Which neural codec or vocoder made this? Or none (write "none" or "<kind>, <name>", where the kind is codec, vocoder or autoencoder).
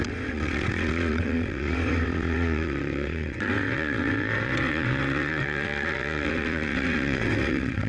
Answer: vocoder, WaveNeXt